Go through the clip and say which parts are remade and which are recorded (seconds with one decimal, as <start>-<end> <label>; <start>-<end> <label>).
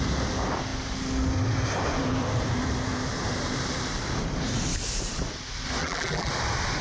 0.0-5.8 recorded; 5.8-6.3 remade; 6.3-6.8 recorded